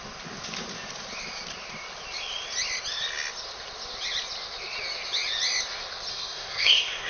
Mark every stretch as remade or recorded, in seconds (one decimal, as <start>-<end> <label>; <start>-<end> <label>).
0.0-6.1 recorded; 6.1-7.1 remade